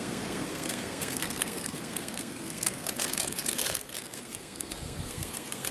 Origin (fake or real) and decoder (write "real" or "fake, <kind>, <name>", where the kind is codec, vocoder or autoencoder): fake, codec, SNAC